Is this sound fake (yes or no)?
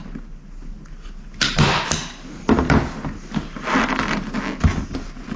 no